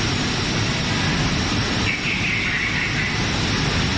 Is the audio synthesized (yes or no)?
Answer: no